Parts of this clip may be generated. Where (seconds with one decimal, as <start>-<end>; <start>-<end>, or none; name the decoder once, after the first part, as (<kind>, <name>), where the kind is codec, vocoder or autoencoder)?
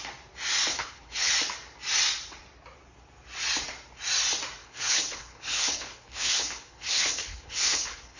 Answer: 0.7-1.3 (codec, HILCodec); 4.6-8.2